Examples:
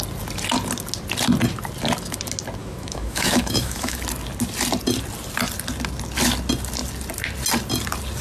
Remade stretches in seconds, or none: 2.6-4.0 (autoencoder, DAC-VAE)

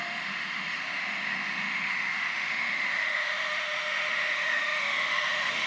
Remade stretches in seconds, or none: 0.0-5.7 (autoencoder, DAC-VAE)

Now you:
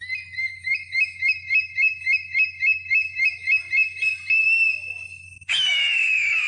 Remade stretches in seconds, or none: 0.5-3.6 (autoencoder, DAC-VAE); 5.5-6.5

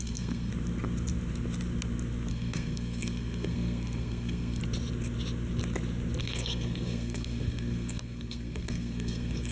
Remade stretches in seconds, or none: 0.0-0.5 (codec, SNAC); 2.3-4.6; 6.2-9.5

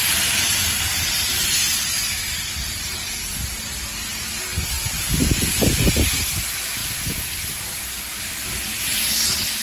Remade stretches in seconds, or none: none

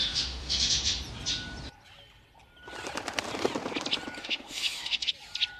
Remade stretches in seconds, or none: 0.0-1.0 (autoencoder, DAC-VAE); 4.2-5.1

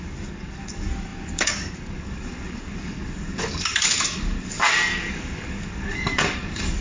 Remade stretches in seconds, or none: 0.0-6.8 (codec, DAC)

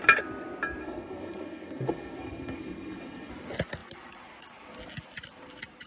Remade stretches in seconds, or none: 0.8-3.3 (codec, SNAC)